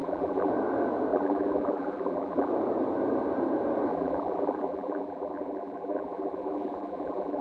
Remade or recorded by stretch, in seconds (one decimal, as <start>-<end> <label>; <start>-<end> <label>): 0.0-0.5 remade; 0.5-1.1 recorded; 1.1-2.5 remade; 2.5-3.9 recorded; 3.9-7.4 remade